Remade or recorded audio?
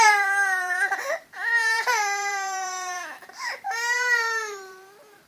remade